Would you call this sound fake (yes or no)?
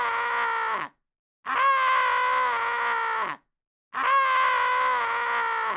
no